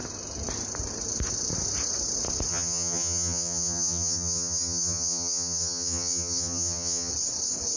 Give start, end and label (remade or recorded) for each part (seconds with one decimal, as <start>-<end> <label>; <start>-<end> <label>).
0.0-2.5 recorded; 2.5-7.1 remade; 7.1-7.8 recorded